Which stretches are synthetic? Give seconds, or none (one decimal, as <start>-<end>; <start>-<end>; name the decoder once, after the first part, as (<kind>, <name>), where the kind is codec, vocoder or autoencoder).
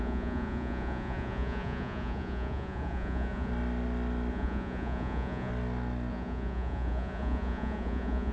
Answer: 0.0-3.5 (vocoder, Vocos); 4.3-5.5; 6.1-8.3